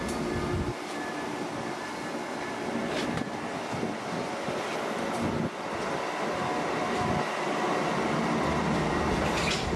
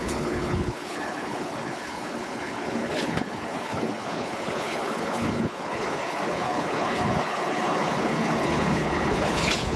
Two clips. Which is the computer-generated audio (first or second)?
second